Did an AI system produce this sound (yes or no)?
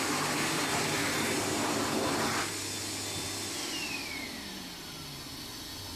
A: no